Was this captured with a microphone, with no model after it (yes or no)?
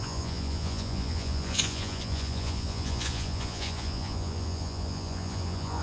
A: no